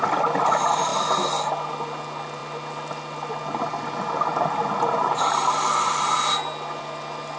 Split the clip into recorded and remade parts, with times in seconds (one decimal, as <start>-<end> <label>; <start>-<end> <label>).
0.0-7.4 recorded